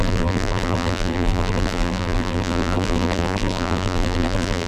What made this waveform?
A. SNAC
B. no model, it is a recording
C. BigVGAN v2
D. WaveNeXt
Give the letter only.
C